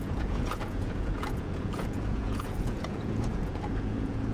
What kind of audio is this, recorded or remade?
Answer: remade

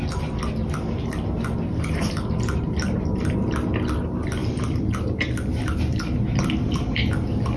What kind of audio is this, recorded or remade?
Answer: recorded